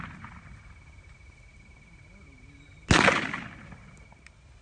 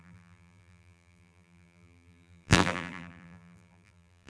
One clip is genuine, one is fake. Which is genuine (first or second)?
first